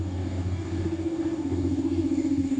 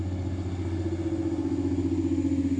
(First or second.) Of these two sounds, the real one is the second